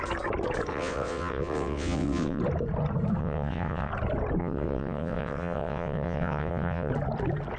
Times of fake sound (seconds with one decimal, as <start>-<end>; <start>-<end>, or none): 0.7-2.4; 3.2-3.9; 4.4-6.9